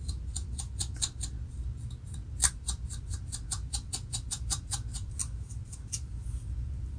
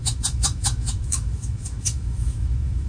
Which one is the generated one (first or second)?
second